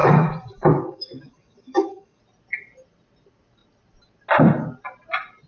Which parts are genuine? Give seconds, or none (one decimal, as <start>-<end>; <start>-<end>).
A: 2.2-5.5